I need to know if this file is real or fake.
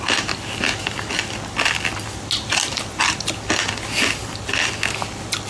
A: real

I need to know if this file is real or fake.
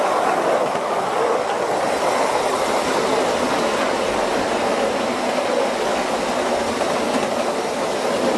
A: real